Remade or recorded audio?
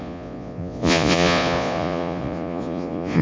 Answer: remade